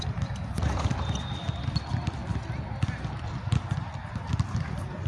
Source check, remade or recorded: recorded